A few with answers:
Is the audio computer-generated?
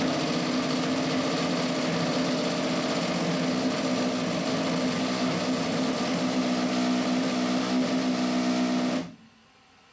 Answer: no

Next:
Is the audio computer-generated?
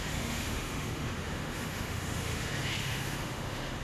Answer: yes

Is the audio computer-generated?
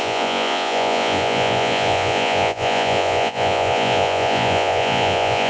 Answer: yes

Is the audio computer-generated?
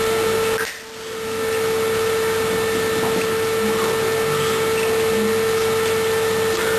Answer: no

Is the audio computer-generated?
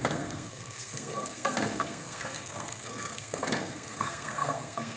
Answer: yes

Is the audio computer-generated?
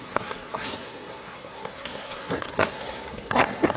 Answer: yes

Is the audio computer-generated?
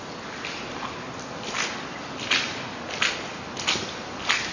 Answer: no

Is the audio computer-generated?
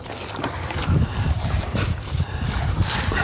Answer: yes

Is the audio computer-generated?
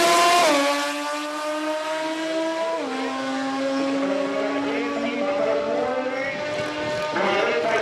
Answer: no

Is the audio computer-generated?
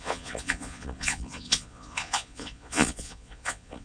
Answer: yes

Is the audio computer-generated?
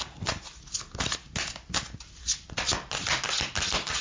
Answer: no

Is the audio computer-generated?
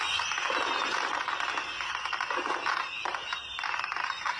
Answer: no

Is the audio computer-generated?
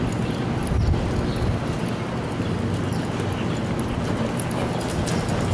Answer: no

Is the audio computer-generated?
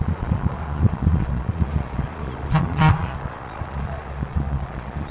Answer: yes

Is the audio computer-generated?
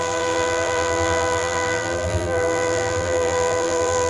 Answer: yes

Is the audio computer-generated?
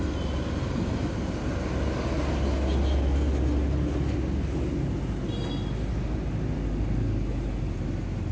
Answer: no